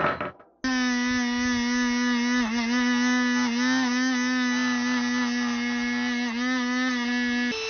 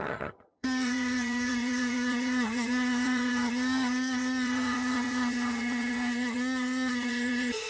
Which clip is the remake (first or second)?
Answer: second